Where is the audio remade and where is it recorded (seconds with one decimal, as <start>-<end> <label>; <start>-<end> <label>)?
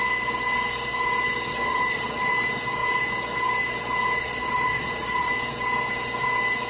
0.0-1.5 recorded; 1.5-2.3 remade; 2.3-4.2 recorded; 4.2-5.3 remade; 5.3-6.7 recorded